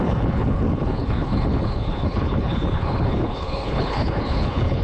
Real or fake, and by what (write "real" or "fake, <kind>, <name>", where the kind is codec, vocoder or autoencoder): fake, codec, HILCodec